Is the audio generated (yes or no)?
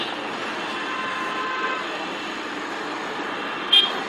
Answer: no